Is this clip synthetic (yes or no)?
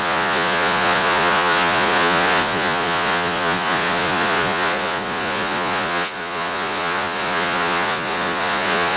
yes